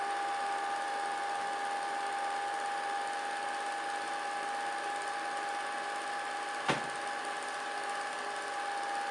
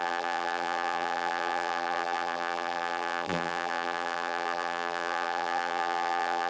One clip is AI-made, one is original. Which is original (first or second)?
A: first